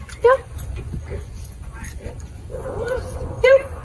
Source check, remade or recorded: remade